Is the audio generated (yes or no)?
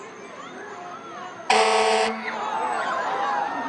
no